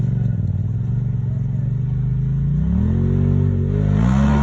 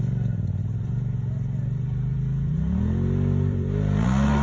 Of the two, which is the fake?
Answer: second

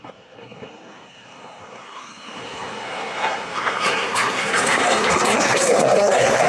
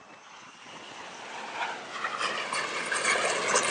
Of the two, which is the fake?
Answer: first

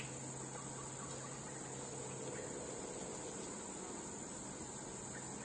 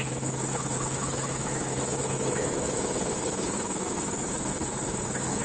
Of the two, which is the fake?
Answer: second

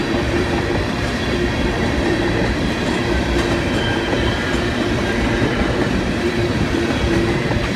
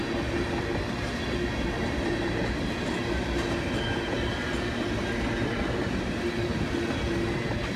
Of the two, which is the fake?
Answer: first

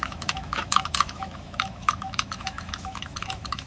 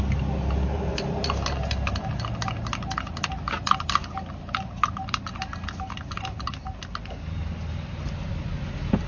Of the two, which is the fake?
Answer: first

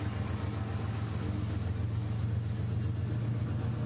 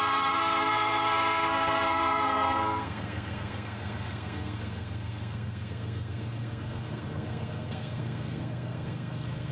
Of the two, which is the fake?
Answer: second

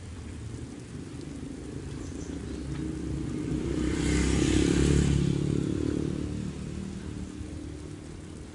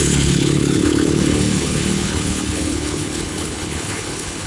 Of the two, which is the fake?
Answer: second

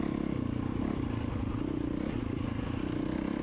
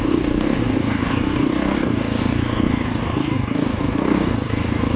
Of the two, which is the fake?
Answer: second